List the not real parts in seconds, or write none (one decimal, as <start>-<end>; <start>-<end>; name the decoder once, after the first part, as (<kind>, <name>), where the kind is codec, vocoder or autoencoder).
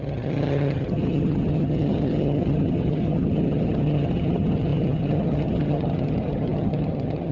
0.0-7.3 (vocoder, HiFi-GAN)